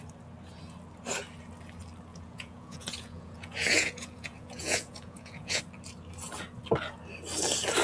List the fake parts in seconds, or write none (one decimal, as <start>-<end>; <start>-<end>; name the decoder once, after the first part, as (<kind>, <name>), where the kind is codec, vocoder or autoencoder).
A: 2.1-5.6 (vocoder, Vocos)